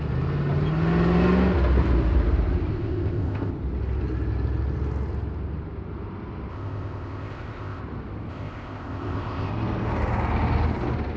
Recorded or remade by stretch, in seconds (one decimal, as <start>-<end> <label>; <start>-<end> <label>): 0.0-2.7 recorded; 2.7-3.5 remade; 3.5-6.5 recorded; 6.5-7.8 remade; 7.8-8.3 recorded; 8.3-9.5 remade; 9.5-11.2 recorded